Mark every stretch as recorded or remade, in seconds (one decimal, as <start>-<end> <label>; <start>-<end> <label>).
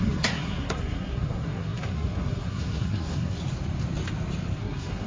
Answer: 0.0-3.4 remade; 3.4-4.6 recorded; 4.6-5.1 remade